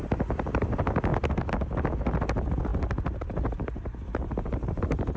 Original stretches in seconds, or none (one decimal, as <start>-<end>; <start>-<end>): 0.0-5.2